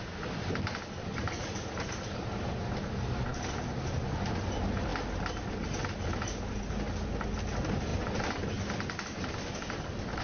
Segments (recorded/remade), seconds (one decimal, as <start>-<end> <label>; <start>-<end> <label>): 0.0-10.2 recorded